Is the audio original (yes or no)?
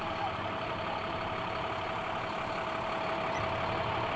yes